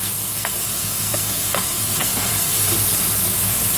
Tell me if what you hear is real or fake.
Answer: fake